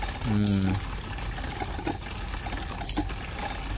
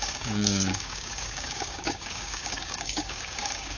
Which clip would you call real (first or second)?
first